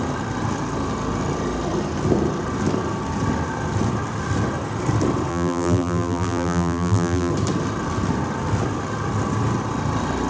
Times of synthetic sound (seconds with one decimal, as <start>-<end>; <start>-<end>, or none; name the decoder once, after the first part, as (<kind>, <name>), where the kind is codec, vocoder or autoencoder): 5.3-7.3 (vocoder, BigVGAN v2)